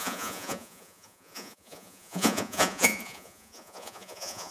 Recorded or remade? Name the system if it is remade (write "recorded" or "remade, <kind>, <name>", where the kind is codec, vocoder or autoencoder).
remade, vocoder, Vocos